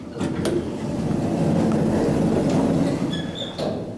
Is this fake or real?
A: real